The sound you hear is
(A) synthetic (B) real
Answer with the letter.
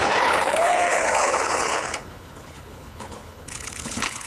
A